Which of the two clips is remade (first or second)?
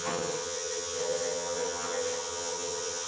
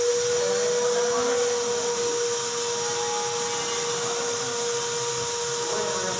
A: first